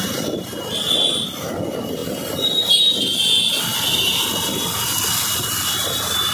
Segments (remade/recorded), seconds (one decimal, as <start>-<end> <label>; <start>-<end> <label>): 0.0-6.3 recorded